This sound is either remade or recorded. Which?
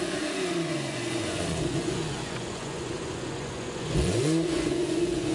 remade